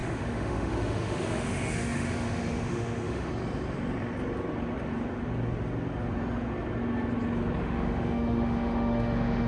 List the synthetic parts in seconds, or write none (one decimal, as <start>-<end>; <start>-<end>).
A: 0.0-3.3; 7.6-9.5